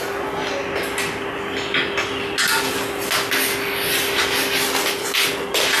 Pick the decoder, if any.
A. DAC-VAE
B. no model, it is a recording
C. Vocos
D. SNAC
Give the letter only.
B